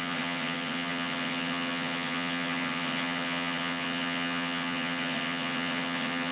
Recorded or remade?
remade